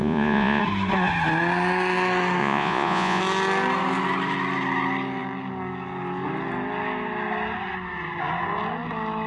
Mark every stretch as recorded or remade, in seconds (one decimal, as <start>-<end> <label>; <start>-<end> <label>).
0.0-0.6 remade; 0.6-2.4 recorded; 2.4-3.2 remade; 3.2-9.3 recorded